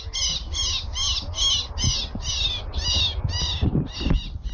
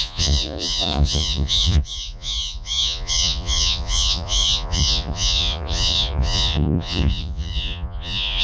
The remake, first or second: second